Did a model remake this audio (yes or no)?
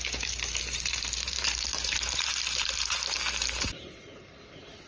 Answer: yes